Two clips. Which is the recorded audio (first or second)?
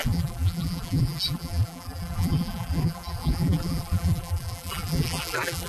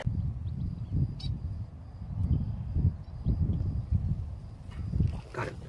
second